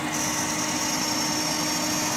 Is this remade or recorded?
recorded